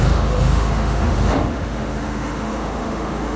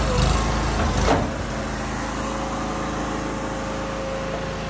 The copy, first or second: first